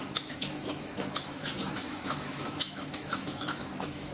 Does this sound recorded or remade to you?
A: remade